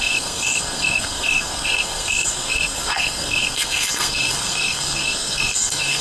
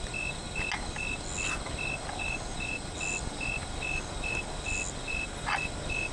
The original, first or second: second